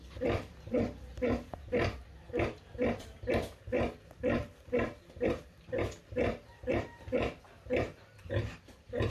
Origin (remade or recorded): remade